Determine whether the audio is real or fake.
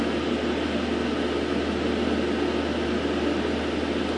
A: real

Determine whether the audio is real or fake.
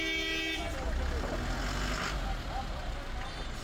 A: real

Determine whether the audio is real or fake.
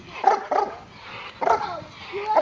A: real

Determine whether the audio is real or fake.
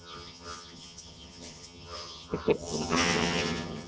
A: fake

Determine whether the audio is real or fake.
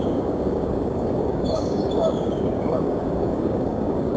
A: fake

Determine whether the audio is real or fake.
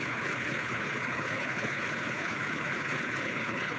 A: fake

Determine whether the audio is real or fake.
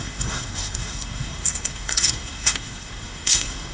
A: fake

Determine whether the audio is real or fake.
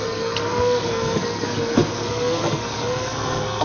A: fake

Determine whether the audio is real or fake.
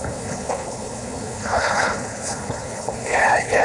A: fake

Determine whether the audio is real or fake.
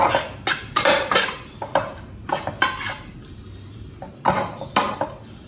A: real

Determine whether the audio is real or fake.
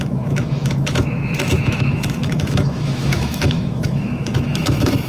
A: fake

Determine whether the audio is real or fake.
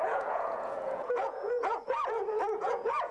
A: fake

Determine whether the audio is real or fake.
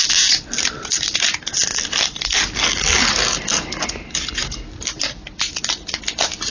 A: real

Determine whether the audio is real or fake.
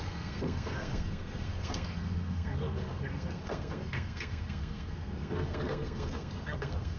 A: fake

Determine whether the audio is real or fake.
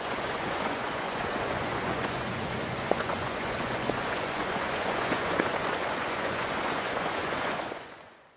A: fake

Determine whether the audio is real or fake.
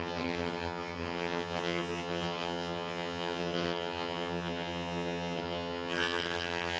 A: fake